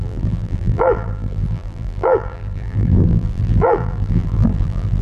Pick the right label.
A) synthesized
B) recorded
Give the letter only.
A